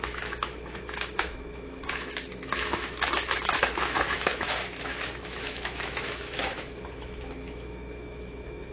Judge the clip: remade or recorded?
remade